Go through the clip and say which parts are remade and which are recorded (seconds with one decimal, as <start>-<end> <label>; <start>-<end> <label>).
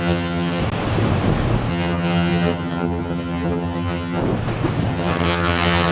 0.0-0.6 remade; 0.6-1.7 recorded; 1.7-4.2 remade; 4.2-4.9 recorded; 4.9-5.9 remade